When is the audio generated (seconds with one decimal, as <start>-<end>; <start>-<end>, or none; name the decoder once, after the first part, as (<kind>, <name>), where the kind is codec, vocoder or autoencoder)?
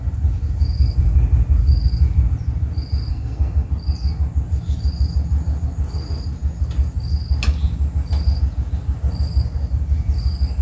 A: 3.1-3.7 (codec, SNAC)